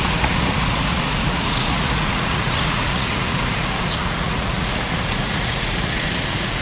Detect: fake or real fake